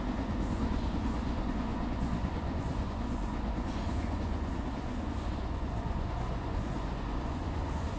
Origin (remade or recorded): remade